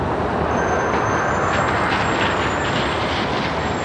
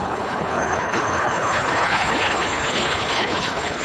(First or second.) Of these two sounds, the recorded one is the first